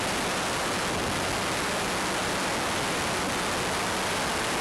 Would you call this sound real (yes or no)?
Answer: yes